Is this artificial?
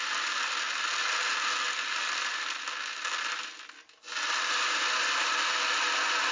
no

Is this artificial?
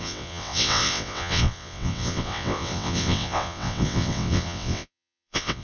yes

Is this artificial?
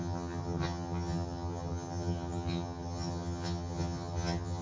yes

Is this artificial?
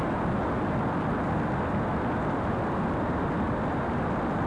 no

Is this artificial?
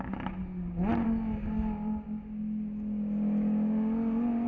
no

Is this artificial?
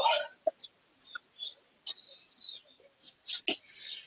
no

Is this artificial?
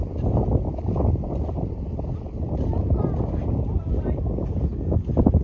no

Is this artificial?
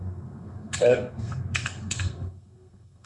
yes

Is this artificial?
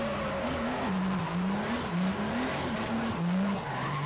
no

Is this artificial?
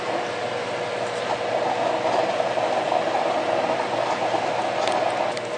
no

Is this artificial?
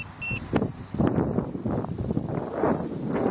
no